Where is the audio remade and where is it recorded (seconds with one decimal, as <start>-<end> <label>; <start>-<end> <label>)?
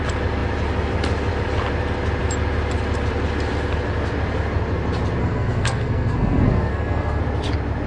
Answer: 0.0-5.2 recorded; 5.2-7.2 remade; 7.2-7.9 recorded